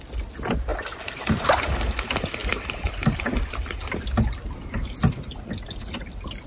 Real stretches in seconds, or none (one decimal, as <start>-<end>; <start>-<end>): 0.0-0.7; 1.6-6.5